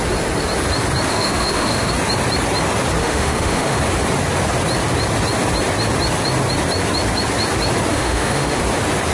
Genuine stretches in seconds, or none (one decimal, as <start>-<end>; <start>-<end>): 0.0-1.1; 1.9-3.0; 3.8-7.9; 8.6-9.1